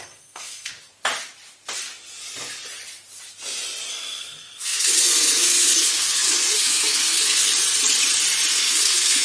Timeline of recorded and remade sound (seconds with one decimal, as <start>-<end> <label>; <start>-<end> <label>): 0.0-0.7 remade; 0.7-3.9 recorded; 3.9-7.5 remade; 7.5-8.5 recorded; 8.5-9.2 remade